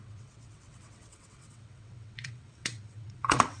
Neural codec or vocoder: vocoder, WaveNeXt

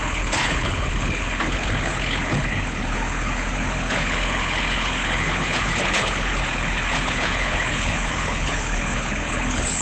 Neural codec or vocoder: codec, HILCodec